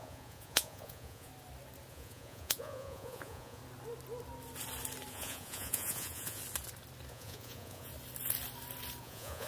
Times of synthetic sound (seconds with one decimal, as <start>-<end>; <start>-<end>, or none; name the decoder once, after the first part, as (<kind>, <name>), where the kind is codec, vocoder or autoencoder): 0.0-1.3 (vocoder, Vocos); 1.9-3.6; 5.1-6.4; 7.1-7.9; 9.0-9.5